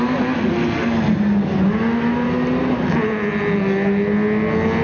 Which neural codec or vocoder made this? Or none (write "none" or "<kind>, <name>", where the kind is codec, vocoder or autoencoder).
none